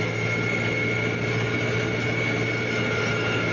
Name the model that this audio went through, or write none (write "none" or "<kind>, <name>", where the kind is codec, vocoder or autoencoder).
none